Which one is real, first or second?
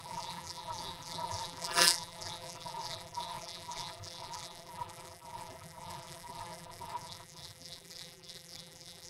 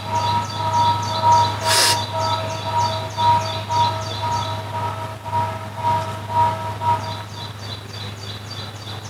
second